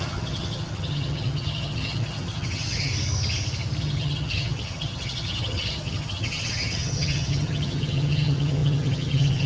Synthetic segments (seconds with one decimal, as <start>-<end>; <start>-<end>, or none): 0.0-2.9; 3.8-9.5